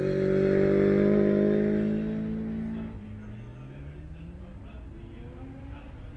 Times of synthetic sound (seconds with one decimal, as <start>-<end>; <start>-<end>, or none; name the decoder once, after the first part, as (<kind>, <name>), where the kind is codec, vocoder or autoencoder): none